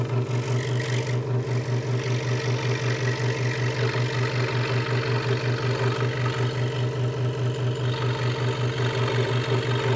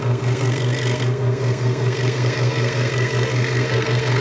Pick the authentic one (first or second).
first